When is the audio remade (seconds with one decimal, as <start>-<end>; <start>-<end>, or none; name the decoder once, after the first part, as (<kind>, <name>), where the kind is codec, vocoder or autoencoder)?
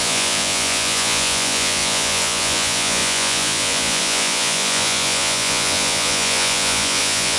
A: 0.0-7.4 (vocoder, Vocos)